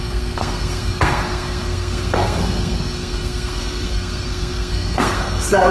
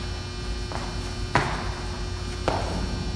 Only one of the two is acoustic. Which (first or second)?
second